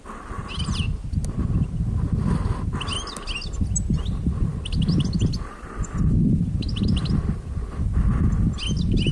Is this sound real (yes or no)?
yes